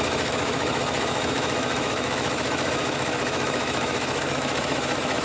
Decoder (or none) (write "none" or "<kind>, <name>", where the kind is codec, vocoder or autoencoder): autoencoder, DAC-VAE